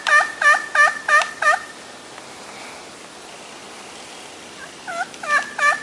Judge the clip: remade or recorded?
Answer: recorded